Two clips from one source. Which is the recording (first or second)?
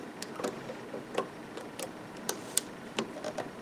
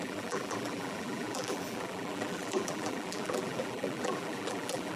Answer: first